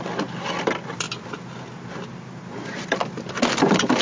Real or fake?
fake